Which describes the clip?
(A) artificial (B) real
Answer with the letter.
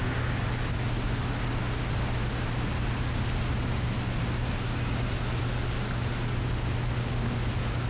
B